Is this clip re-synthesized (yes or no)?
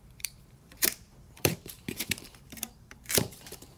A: yes